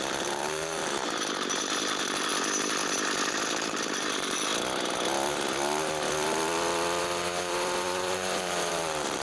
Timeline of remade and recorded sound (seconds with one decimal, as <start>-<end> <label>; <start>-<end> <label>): 0.0-2.3 remade; 2.3-3.3 recorded; 3.3-4.5 remade; 4.5-7.0 recorded; 7.0-9.2 remade